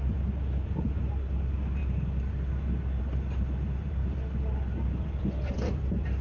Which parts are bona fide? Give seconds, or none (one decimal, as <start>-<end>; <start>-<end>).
1.8-3.0